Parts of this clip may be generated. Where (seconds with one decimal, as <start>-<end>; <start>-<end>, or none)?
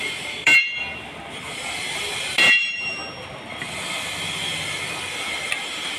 0.0-0.7; 2.2-3.0; 5.0-6.0